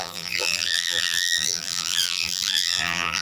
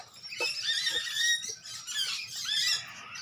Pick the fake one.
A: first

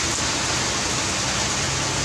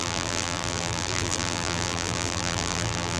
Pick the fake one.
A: second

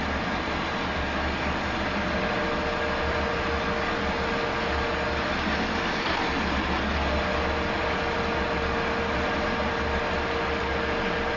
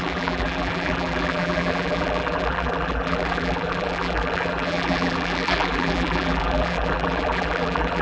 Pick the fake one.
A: second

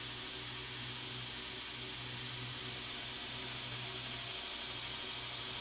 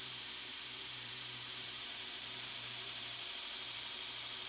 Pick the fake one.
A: second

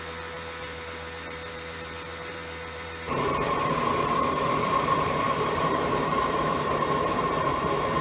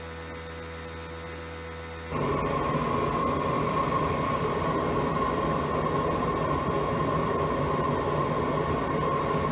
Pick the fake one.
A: first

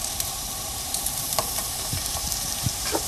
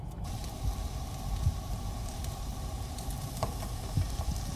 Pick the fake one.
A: first